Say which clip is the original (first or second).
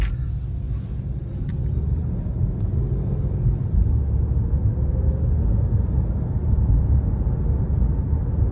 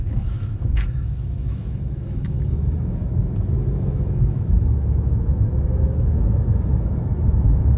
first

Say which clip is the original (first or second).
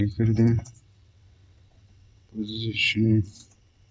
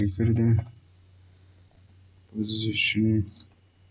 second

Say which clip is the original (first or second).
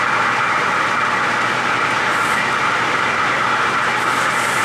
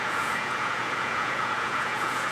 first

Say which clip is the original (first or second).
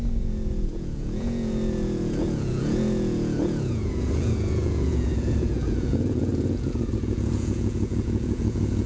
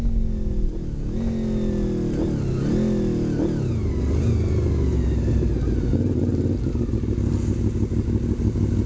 second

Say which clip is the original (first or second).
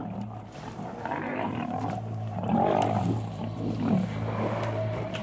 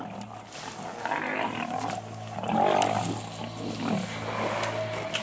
second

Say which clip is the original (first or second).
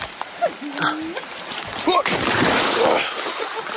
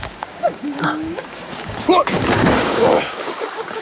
first